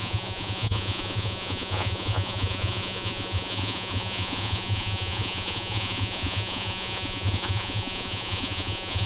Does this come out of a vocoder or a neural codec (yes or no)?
yes